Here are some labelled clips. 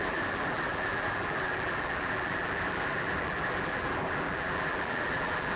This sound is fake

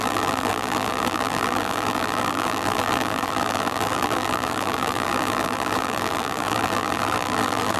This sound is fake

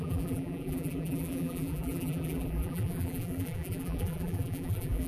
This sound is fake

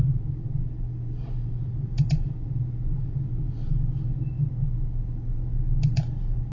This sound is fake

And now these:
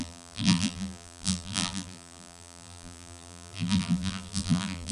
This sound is fake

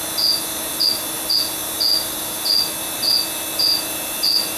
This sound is real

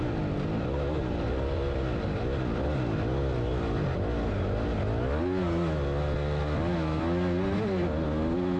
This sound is real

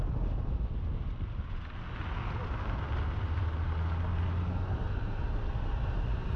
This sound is real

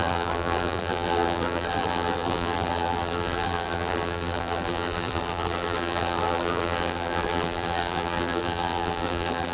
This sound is fake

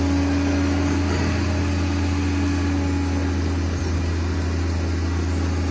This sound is real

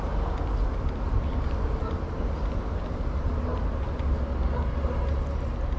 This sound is real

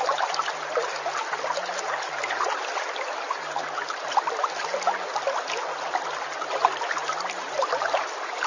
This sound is real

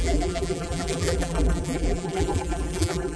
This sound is fake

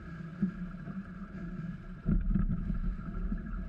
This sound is fake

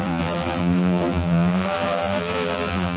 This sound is fake